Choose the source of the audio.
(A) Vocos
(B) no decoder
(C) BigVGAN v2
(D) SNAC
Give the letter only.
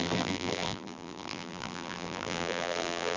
C